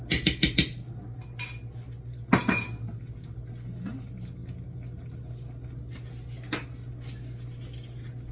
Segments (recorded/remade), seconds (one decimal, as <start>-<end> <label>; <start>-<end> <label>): 0.0-8.3 recorded